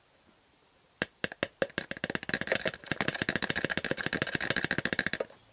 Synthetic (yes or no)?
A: no